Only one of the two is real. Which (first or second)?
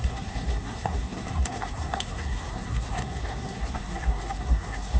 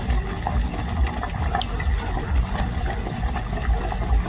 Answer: second